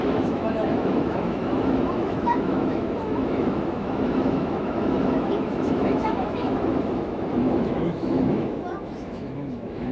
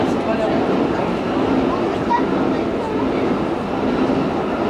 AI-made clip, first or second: first